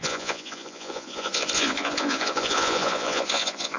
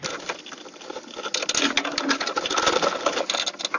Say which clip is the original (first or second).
second